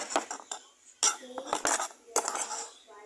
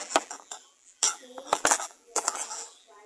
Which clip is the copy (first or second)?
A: second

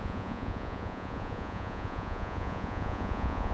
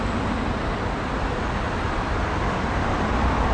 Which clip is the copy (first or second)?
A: first